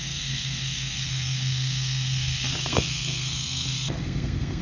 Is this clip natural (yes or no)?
no